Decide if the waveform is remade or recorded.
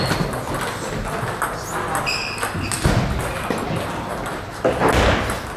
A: recorded